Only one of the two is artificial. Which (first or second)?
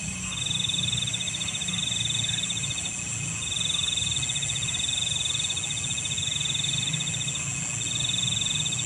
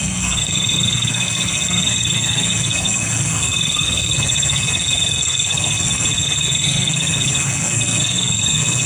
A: second